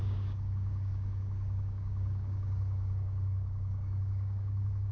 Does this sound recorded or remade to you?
remade